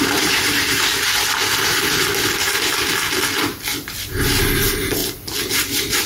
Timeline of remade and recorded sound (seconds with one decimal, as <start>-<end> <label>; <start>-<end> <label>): 0.0-0.9 remade; 0.9-4.6 recorded; 4.6-5.0 remade; 5.0-6.1 recorded